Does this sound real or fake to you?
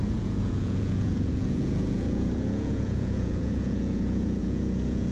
fake